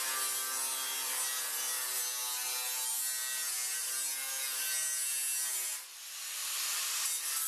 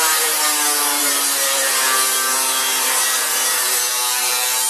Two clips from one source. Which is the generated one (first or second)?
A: second